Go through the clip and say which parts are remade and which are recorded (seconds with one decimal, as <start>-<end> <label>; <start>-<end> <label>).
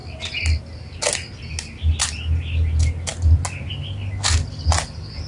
0.0-5.3 recorded